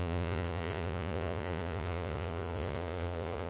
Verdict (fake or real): fake